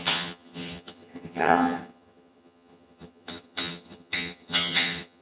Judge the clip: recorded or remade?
remade